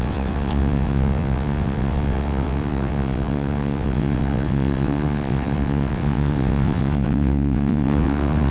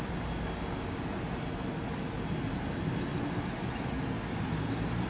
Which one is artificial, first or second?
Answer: first